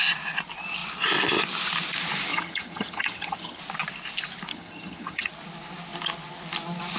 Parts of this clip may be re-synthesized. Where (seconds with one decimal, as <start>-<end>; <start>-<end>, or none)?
2.3-3.6; 4.5-5.3